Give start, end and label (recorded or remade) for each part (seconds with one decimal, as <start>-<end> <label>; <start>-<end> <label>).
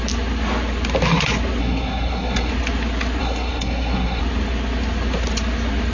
0.0-1.6 recorded; 1.6-2.5 remade; 2.5-3.2 recorded; 3.2-4.2 remade; 4.2-5.9 recorded